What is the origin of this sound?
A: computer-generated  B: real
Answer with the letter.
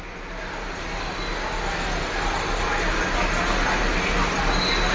B